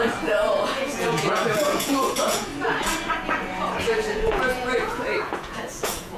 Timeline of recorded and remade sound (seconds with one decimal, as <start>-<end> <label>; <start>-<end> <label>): 0.0-2.5 remade; 2.5-3.8 recorded; 3.8-6.2 remade